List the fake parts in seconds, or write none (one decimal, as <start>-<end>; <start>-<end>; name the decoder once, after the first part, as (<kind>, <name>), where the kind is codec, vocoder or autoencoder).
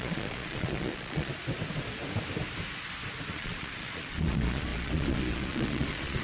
0.0-1.3 (vocoder, Vocos); 3.3-6.2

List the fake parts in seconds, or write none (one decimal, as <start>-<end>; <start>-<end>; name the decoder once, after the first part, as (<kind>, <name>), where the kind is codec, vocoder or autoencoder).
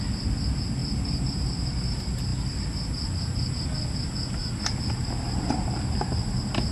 none